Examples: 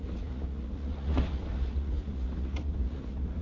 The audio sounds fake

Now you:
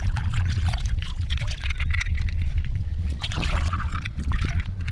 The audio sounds fake